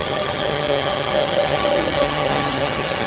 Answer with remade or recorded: remade